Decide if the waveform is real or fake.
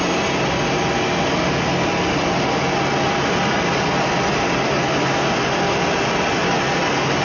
real